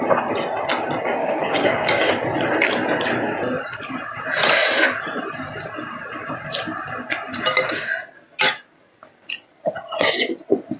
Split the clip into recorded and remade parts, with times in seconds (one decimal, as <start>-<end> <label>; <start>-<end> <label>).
0.0-1.2 recorded; 1.2-2.1 remade; 2.1-10.8 recorded